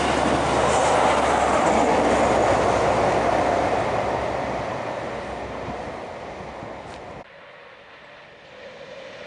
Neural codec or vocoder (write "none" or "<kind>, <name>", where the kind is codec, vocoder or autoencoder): none